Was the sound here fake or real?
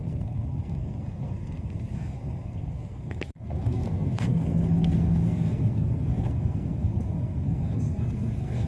fake